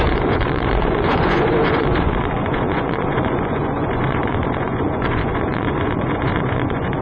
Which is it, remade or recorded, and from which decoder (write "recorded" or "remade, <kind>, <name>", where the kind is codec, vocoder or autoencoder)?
remade, vocoder, Vocos